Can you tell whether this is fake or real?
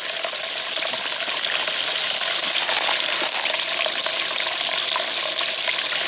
real